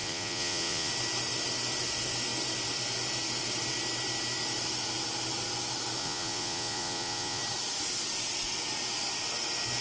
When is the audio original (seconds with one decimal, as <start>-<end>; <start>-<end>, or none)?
0.9-6.0; 7.4-9.8